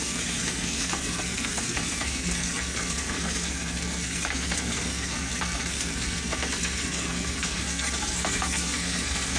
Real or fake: fake